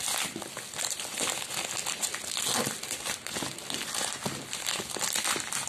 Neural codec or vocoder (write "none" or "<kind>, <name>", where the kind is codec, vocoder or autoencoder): none